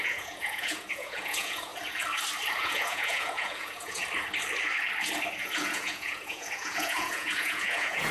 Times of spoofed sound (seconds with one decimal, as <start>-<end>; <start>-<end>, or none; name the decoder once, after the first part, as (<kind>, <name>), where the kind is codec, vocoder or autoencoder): 0.0-1.7 (vocoder, Vocos); 2.6-4.0; 5.4-8.1